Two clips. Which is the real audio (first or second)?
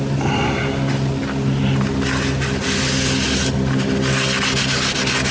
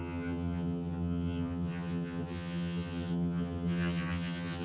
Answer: first